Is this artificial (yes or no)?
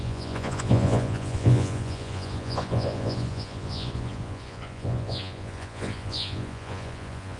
yes